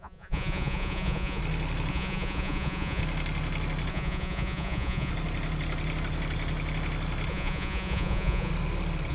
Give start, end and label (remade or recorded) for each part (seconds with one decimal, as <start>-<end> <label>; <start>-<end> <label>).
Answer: 0.0-1.4 remade; 1.4-1.9 recorded; 1.9-3.0 remade; 3.0-3.9 recorded; 3.9-5.1 remade; 5.1-7.3 recorded; 7.3-8.5 remade; 8.5-9.1 recorded